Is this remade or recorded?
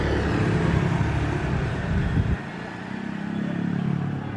recorded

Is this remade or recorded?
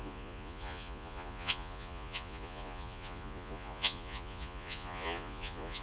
remade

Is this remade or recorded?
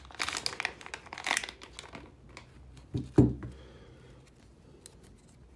recorded